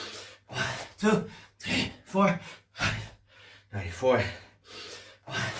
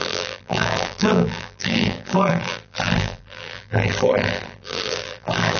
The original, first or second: first